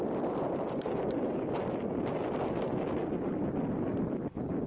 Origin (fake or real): real